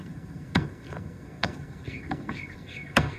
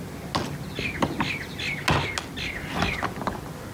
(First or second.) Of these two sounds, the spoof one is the first